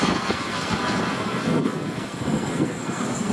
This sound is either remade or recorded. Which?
remade